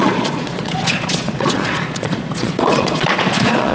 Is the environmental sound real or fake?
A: fake